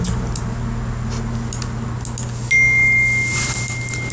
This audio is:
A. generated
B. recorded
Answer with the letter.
B